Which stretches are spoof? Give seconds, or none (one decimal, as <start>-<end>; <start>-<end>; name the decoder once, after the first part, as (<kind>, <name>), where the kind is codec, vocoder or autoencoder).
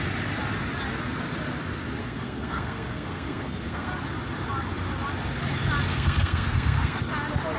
2.0-3.9 (codec, SNAC); 5.9-7.0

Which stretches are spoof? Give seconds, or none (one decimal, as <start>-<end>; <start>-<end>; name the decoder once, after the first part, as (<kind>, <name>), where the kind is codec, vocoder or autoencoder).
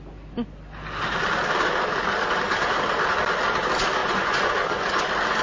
4.0-5.0 (vocoder, Vocos)